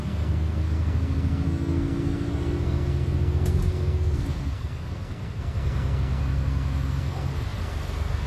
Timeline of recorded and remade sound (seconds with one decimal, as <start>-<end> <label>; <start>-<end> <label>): 0.0-8.3 remade